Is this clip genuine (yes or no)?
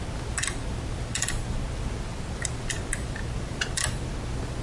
yes